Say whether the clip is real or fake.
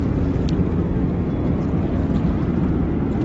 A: real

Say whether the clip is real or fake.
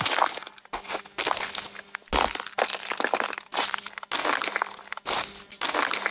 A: real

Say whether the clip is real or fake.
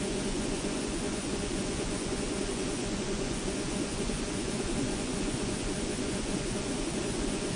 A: fake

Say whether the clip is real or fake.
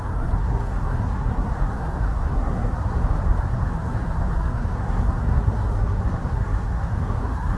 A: fake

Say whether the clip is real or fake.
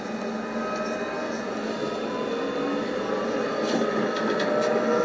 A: real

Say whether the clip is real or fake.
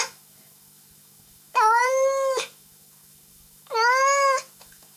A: fake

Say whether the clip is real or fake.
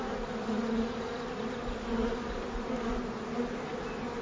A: real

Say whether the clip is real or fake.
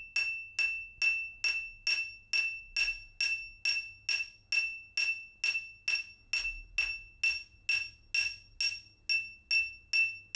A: real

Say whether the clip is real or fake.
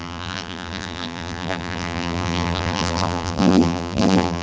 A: fake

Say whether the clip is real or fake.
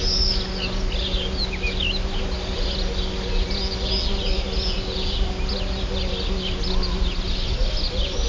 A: real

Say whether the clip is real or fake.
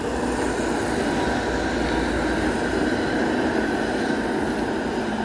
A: real